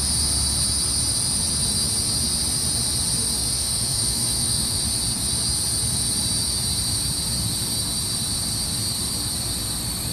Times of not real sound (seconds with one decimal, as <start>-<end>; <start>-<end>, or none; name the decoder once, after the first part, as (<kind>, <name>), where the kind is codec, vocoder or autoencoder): 3.6-4.8 (autoencoder, DAC-VAE)